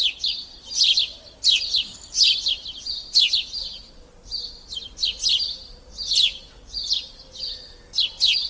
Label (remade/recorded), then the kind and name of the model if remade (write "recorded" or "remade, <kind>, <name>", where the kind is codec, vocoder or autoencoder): recorded